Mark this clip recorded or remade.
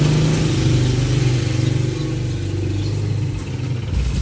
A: recorded